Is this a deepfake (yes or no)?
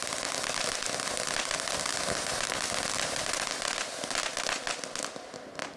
no